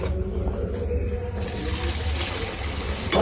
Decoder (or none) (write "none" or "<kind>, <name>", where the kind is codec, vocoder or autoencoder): none